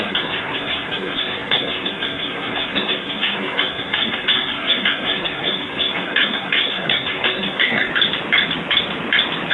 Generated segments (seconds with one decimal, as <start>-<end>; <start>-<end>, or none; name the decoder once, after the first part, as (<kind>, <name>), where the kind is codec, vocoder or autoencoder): 0.0-7.9 (codec, SNAC)